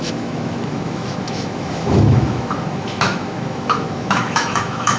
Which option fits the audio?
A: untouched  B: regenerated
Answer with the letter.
B